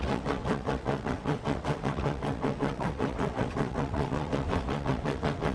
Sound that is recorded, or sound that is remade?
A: remade